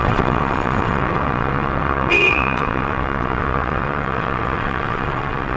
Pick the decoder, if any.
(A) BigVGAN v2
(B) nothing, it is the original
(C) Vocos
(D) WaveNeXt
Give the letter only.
D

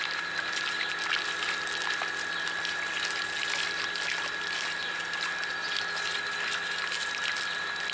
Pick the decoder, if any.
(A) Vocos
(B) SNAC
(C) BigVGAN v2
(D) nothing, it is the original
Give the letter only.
D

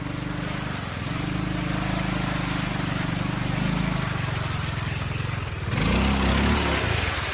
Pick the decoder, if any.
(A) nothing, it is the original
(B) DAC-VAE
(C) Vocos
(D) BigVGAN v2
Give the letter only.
A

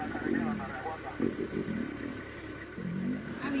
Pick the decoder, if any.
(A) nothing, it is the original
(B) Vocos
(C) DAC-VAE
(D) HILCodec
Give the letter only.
A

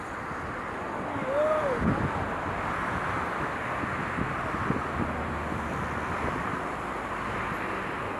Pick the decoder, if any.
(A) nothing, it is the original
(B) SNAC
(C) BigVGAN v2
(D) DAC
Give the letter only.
A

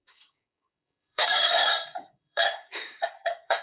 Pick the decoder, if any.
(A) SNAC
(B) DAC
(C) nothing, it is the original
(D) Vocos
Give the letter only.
B